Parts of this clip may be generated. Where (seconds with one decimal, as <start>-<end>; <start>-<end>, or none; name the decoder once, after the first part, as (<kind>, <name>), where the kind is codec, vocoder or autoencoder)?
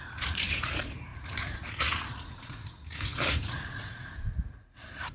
0.0-5.1 (vocoder, Vocos)